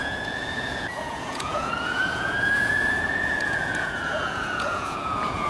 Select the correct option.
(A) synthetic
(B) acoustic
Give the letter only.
A